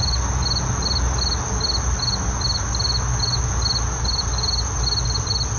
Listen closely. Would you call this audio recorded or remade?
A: recorded